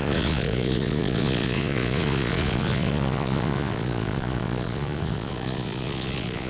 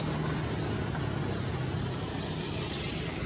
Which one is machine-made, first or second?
first